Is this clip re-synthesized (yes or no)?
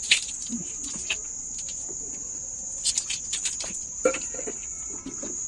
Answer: yes